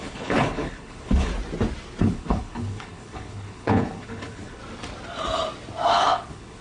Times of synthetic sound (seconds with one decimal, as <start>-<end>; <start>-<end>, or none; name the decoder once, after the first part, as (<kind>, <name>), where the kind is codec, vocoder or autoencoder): 0.0-1.3 (codec, HILCodec); 2.0-4.6; 5.9-6.6